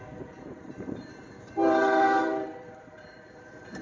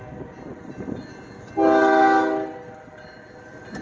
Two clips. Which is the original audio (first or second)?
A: second